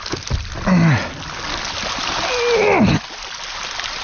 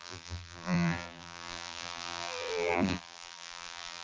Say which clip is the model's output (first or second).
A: second